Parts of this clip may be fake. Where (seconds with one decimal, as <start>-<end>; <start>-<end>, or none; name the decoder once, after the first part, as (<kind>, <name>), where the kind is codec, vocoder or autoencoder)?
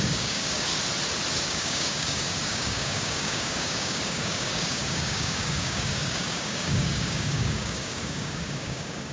0.0-0.7 (codec, DAC); 1.4-9.1